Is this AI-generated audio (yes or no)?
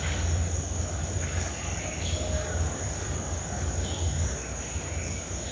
yes